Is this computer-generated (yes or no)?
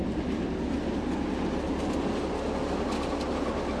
no